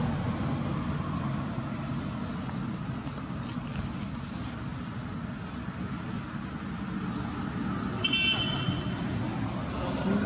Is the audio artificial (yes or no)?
no